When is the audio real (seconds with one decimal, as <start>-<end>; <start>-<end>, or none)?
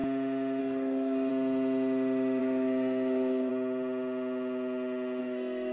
0.0-0.6; 1.3-2.4; 3.5-5.2